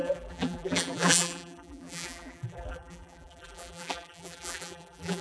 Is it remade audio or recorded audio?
remade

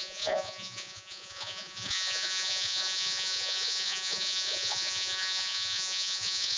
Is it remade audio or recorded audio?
remade